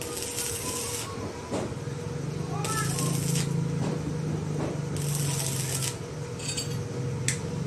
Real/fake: real